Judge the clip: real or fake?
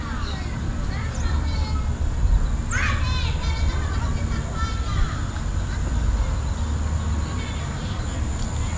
real